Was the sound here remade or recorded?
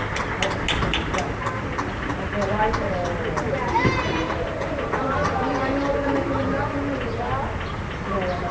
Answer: recorded